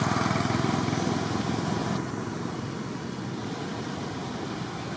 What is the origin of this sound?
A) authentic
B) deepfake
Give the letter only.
A